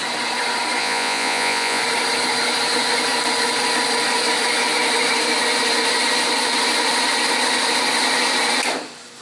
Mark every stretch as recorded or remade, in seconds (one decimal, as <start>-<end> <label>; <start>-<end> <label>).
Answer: 0.0-0.8 recorded; 0.8-1.8 remade; 1.8-9.2 recorded